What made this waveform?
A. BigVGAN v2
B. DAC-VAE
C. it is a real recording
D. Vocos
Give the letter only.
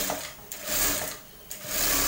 C